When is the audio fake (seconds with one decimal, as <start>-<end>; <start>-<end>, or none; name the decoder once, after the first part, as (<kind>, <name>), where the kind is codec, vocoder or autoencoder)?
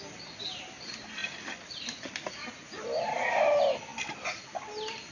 none